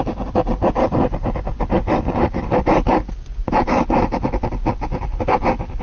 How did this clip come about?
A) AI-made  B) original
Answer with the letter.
B